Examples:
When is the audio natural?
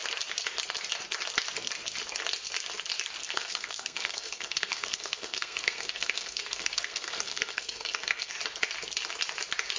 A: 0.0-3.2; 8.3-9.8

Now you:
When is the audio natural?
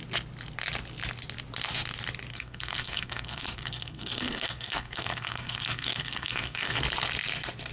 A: 0.0-2.3; 6.8-7.7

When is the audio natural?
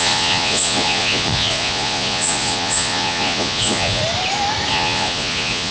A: 4.0-4.7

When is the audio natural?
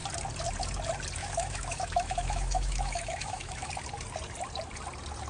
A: 0.0-1.2; 3.7-5.3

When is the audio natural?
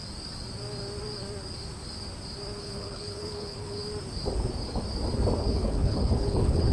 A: 0.0-2.6; 3.8-5.4